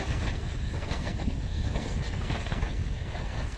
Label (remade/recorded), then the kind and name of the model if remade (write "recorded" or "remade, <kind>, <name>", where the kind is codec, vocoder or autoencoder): remade, codec, SNAC